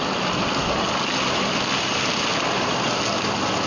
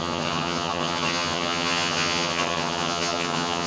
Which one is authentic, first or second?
first